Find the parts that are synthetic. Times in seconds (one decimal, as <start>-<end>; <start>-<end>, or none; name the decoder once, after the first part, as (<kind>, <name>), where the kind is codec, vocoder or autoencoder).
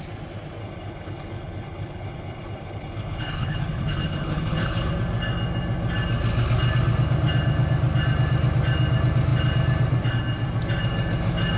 0.6-4.9 (codec, HILCodec)